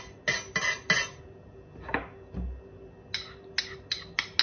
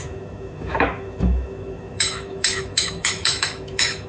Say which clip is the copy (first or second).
second